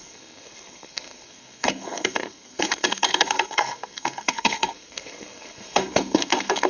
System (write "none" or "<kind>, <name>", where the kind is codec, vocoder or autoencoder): codec, SNAC